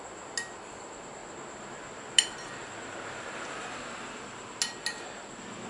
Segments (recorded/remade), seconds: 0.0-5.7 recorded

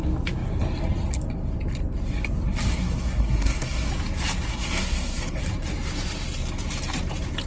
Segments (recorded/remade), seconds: 0.0-2.7 recorded; 2.7-3.9 remade; 3.9-4.5 recorded; 4.5-5.4 remade; 5.4-7.5 recorded

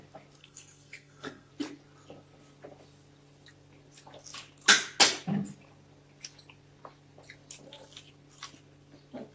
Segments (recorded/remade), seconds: 0.0-0.4 recorded; 0.4-1.5 remade; 1.5-9.3 recorded